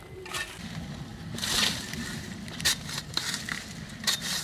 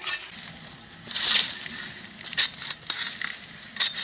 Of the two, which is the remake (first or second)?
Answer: first